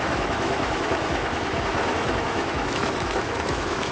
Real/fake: fake